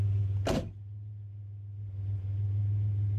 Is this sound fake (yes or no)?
no